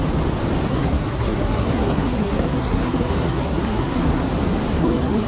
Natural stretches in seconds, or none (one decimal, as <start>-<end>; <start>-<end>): 0.0-0.7; 4.3-4.8